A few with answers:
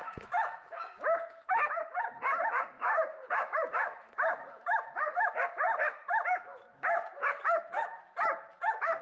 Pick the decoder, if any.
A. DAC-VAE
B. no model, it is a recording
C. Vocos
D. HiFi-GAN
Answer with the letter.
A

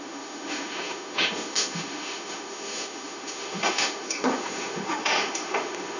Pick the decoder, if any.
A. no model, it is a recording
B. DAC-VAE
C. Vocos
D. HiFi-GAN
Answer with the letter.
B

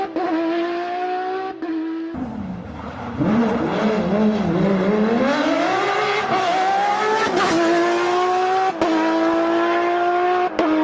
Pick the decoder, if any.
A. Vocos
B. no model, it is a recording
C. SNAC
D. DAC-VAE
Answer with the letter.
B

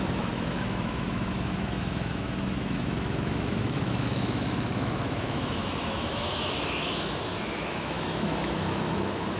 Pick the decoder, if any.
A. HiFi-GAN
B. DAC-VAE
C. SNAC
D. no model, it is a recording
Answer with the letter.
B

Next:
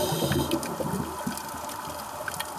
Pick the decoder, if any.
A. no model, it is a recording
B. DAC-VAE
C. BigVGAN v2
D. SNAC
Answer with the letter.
A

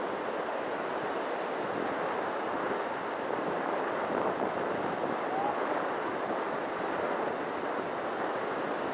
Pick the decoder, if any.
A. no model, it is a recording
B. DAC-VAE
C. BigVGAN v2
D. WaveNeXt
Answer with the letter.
A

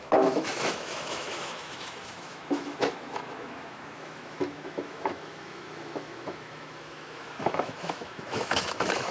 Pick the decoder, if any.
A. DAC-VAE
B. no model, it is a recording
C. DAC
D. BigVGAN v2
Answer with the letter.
A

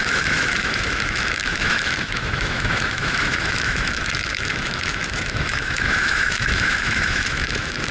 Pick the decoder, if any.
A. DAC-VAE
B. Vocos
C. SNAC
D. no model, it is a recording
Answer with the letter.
A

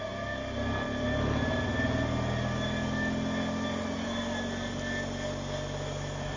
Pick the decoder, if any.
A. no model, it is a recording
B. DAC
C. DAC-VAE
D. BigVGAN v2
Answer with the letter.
A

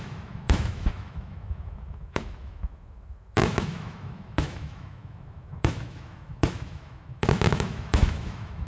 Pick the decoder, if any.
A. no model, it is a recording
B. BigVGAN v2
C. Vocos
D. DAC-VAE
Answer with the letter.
D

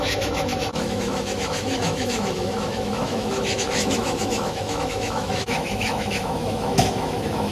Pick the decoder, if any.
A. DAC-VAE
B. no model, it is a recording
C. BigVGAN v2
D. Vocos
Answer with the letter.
A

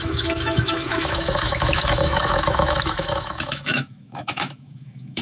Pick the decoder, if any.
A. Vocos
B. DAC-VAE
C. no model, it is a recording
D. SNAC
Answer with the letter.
B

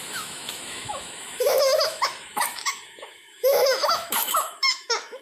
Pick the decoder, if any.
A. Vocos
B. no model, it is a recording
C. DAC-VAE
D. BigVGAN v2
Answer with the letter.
C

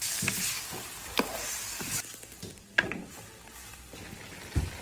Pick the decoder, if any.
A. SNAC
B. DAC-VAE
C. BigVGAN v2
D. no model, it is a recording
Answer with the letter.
D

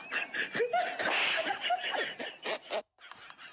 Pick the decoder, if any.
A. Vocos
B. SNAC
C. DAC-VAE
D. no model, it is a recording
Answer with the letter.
D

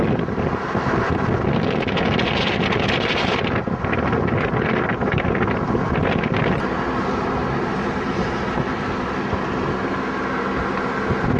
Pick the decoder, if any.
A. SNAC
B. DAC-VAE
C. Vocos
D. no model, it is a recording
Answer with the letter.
D